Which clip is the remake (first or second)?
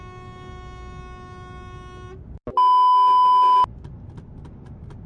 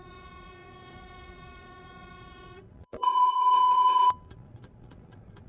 second